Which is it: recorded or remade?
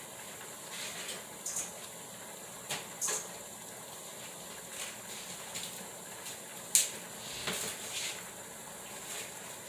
recorded